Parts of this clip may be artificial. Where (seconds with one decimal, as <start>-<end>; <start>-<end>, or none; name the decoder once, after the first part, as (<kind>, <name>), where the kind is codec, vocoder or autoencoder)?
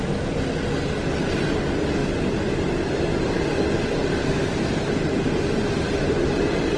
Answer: none